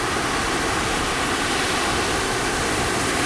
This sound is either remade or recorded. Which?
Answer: recorded